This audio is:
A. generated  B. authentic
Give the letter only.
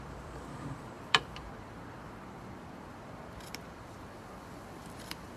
A